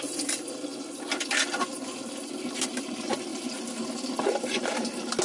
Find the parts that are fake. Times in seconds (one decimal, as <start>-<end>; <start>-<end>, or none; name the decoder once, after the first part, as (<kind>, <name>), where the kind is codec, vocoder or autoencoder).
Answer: 0.0-0.7 (vocoder, BigVGAN v2); 2.6-3.3; 4.4-5.2